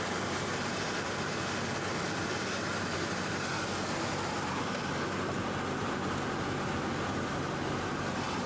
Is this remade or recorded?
recorded